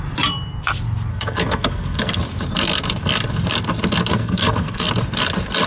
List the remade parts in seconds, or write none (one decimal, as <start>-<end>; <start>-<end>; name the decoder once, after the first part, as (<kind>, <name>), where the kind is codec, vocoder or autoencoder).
1.1-2.2 (codec, SNAC); 4.1-4.9